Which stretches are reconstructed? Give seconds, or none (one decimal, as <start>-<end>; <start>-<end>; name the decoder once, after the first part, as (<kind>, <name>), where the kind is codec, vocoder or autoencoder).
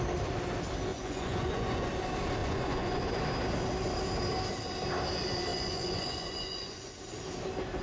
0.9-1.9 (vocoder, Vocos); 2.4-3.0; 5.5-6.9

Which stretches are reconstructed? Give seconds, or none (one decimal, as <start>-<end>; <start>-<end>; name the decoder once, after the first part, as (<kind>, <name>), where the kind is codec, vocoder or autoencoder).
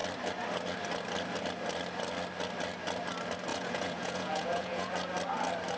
3.5-4.9 (vocoder, Vocos)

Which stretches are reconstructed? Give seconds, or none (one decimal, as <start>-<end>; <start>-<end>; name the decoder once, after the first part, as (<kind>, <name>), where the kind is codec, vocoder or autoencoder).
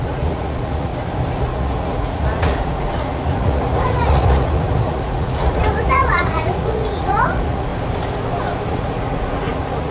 0.0-0.9 (vocoder, Vocos); 1.4-7.7; 8.7-9.9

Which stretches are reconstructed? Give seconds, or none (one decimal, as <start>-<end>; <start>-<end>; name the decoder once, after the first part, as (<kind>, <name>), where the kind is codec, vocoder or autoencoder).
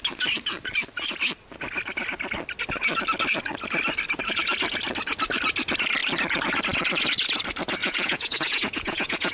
7.8-9.3 (vocoder, Vocos)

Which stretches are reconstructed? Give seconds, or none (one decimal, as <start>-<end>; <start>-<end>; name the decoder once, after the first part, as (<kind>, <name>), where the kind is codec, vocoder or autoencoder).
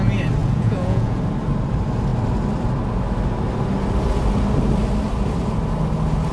0.4-1.2 (vocoder, Vocos)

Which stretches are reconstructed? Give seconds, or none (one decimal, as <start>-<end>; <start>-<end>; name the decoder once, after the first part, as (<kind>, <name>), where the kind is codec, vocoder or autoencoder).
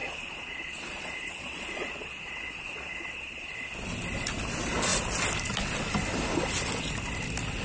0.0-3.6 (vocoder, Vocos)